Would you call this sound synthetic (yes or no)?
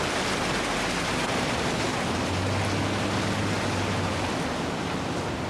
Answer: no